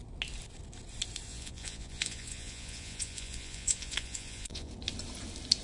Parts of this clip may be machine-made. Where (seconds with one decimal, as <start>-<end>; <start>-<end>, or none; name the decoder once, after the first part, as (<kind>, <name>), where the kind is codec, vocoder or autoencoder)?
1.3-4.7 (vocoder, Vocos)